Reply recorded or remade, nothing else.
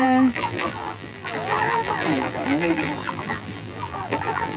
remade